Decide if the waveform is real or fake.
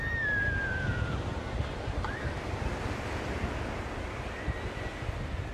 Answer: real